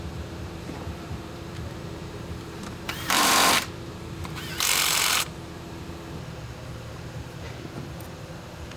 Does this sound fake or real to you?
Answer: fake